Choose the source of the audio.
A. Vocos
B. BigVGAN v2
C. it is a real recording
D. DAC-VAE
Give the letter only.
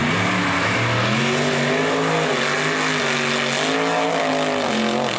C